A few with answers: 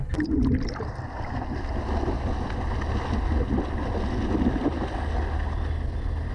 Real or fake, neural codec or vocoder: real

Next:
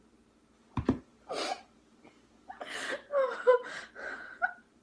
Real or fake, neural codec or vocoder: real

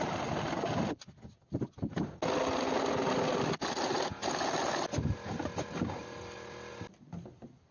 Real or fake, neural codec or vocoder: real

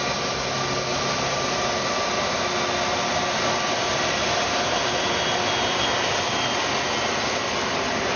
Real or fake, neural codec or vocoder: real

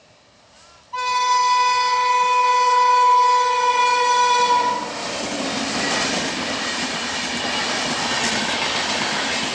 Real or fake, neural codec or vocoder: real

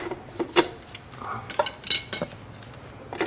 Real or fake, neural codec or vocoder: real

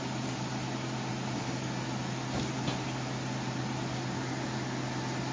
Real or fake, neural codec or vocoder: real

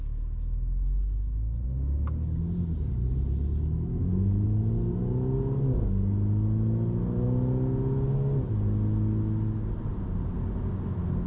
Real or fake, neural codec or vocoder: real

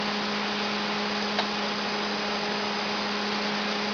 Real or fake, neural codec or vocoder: real